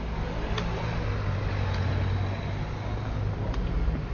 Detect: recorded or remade recorded